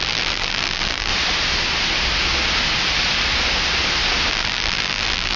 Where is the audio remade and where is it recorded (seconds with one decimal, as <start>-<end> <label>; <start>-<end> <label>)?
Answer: 0.0-1.1 remade; 1.1-4.3 recorded; 4.3-5.4 remade

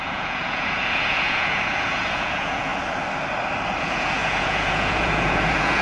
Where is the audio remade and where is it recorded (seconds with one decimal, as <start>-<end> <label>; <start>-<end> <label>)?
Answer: 0.0-2.7 remade; 2.7-3.8 recorded; 3.8-5.8 remade

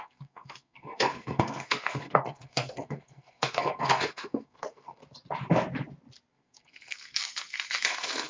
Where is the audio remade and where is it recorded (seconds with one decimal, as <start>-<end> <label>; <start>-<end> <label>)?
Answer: 0.0-5.0 remade; 5.0-6.3 recorded; 6.3-8.3 remade

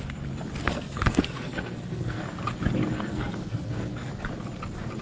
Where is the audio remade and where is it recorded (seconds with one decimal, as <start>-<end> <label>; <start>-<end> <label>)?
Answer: 0.0-0.6 recorded; 0.6-2.2 remade; 2.2-3.1 recorded; 3.1-4.1 remade; 4.1-5.0 recorded

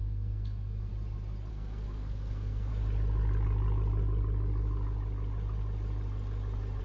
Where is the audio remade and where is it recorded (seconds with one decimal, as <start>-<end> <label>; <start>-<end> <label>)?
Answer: 0.0-0.9 remade; 0.9-1.5 recorded; 1.5-2.7 remade; 2.7-6.8 recorded

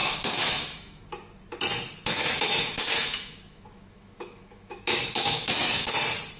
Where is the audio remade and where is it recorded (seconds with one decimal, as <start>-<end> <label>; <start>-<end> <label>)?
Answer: 0.0-1.0 remade; 1.0-2.1 recorded; 2.1-5.9 remade; 5.9-6.4 recorded

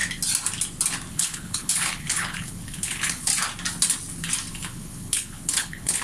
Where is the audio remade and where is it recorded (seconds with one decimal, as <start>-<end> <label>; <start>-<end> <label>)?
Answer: 0.0-1.1 recorded; 1.1-3.3 remade; 3.3-4.5 recorded; 4.5-6.0 remade

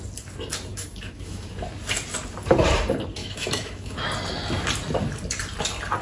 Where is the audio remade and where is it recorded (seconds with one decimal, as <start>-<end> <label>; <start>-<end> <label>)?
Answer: 0.0-0.7 recorded; 0.7-1.5 remade; 1.5-3.2 recorded; 3.2-4.1 remade; 4.1-6.0 recorded